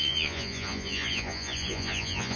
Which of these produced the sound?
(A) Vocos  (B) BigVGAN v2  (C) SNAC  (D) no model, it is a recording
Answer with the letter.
A